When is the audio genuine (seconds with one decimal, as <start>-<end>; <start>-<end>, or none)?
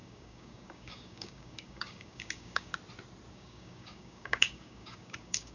2.7-3.3